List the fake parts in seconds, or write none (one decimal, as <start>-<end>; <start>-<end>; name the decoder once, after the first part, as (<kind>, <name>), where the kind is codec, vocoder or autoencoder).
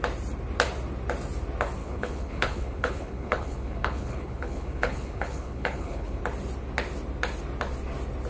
1.8-6.2 (codec, HILCodec)